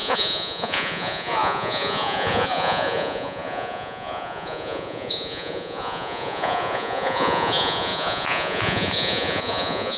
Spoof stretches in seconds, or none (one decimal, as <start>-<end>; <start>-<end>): 0.0-10.0